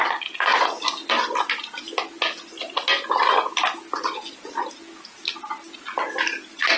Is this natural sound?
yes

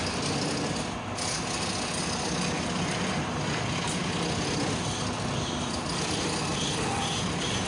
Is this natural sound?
yes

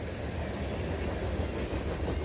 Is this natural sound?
yes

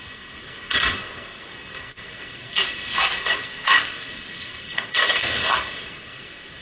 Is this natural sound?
no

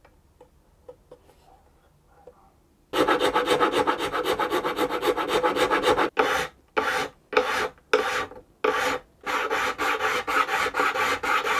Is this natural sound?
yes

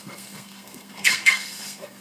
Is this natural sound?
no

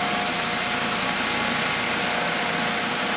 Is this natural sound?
yes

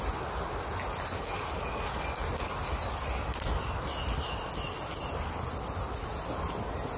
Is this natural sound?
yes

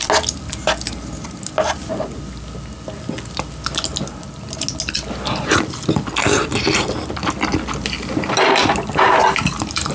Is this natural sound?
yes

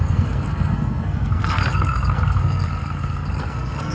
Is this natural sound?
no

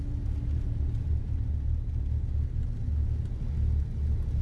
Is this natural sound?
yes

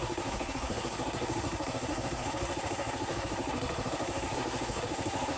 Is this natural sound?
no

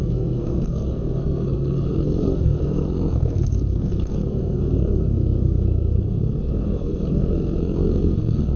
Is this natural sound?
no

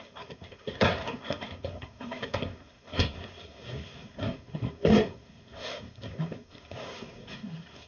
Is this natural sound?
no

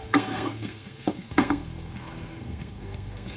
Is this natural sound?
no